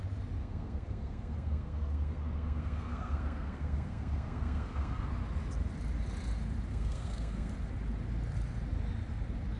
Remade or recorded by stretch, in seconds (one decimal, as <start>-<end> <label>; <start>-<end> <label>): 0.0-0.4 recorded; 0.4-5.1 remade; 5.1-6.7 recorded; 6.7-7.5 remade; 7.5-9.6 recorded